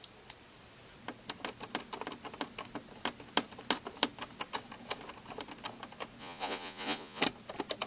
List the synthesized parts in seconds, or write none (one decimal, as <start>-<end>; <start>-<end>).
6.2-7.2

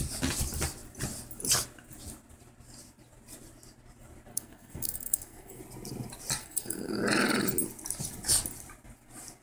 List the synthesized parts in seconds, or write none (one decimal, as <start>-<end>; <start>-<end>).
4.3-5.6; 6.4-7.0

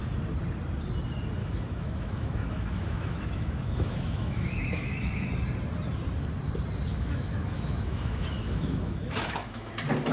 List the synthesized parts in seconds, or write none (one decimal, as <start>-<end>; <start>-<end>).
1.4-5.3; 6.9-9.7

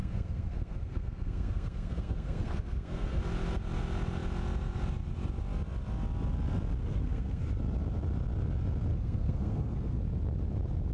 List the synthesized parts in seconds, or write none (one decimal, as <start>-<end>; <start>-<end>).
0.0-3.2; 6.8-7.4; 8.9-10.0

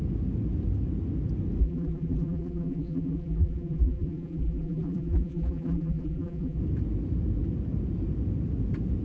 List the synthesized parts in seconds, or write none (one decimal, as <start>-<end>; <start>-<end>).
1.6-6.6